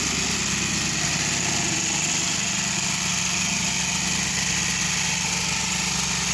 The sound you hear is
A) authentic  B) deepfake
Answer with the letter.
A